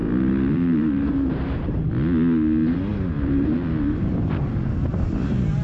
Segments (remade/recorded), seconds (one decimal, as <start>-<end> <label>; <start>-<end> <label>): 0.0-1.9 remade; 1.9-2.9 recorded; 2.9-5.6 remade